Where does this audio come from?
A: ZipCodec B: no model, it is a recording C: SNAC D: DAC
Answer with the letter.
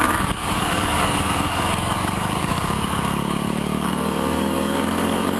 D